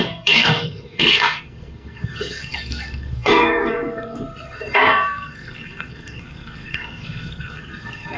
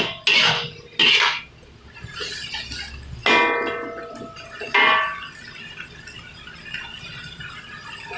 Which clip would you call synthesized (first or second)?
first